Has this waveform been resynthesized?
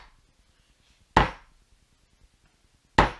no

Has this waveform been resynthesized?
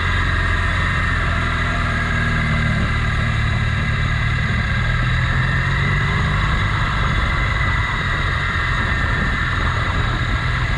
yes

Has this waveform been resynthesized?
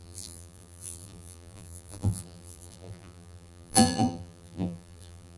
yes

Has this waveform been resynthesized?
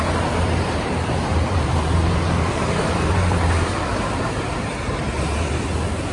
yes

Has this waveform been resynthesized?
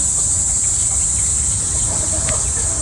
no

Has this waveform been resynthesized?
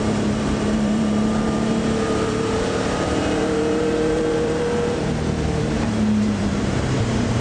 yes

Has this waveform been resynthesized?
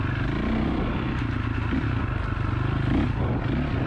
no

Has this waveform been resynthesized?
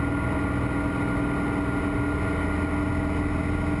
no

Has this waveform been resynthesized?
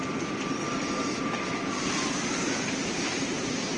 yes